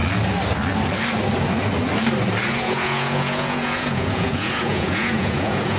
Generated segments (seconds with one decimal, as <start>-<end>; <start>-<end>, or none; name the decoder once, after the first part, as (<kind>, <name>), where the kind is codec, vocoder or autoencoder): 2.5-5.8 (vocoder, Vocos)